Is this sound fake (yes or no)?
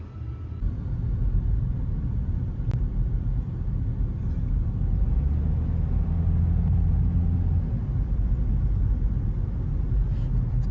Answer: no